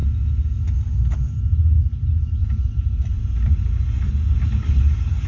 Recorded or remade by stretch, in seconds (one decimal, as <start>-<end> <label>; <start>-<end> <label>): 0.0-2.4 recorded; 2.4-3.2 remade; 3.2-5.3 recorded